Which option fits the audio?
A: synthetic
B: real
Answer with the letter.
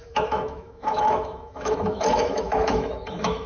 A